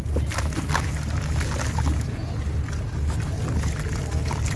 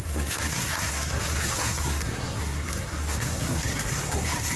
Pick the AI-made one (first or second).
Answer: second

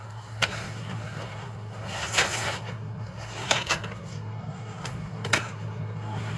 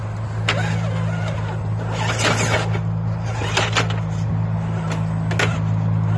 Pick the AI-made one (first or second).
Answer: first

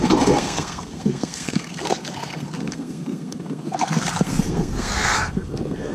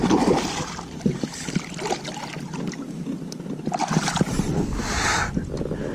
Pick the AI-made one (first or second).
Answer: first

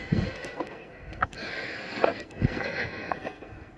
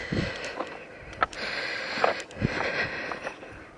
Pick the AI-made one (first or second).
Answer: first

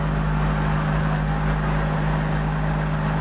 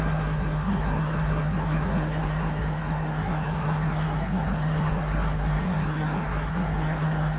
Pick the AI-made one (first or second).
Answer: second